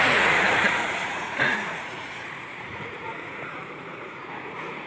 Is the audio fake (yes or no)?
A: yes